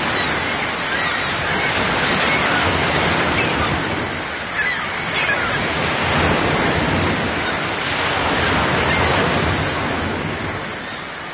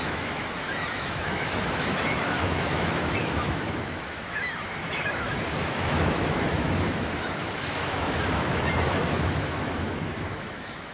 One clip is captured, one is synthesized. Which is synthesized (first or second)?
second